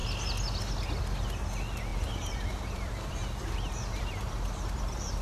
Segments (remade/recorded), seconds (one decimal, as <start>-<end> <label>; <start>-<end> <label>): 0.0-1.9 recorded; 1.9-5.2 remade